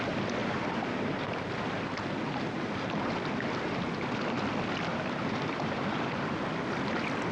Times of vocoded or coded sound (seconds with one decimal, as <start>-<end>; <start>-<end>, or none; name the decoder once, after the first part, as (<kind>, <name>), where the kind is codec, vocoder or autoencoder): 0.4-1.2 (vocoder, BigVGAN v2); 4.9-5.8